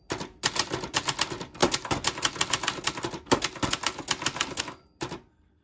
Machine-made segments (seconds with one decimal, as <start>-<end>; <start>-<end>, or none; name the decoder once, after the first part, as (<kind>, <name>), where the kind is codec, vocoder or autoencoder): none